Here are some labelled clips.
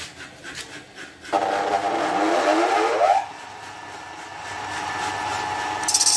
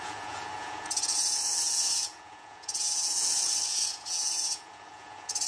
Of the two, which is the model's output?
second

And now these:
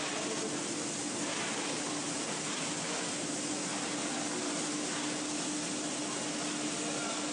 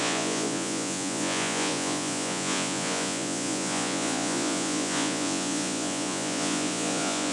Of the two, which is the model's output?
second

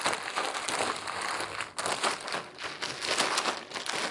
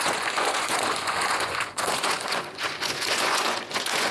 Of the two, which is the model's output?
second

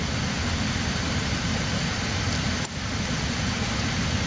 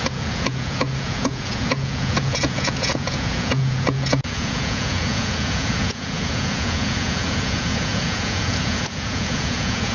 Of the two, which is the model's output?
second